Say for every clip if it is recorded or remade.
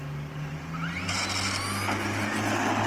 recorded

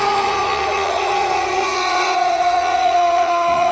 remade